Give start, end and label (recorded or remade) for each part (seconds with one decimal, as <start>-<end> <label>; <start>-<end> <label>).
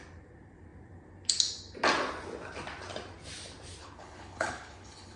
0.0-3.8 recorded; 3.8-5.2 remade